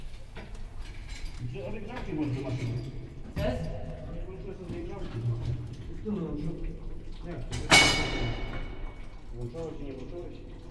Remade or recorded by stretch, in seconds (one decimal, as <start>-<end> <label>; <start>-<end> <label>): 0.0-1.0 recorded; 1.0-3.5 remade; 3.5-4.8 recorded; 4.8-6.3 remade; 6.3-10.7 recorded